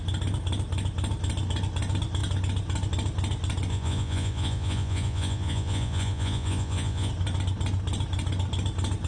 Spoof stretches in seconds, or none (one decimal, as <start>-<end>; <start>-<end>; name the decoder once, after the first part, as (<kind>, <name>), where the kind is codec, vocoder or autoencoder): 3.7-7.1 (vocoder, Vocos)